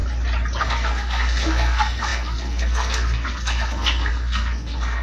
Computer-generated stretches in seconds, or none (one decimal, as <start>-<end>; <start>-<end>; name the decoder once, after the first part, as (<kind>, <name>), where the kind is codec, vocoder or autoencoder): 0.6-5.0 (codec, SNAC)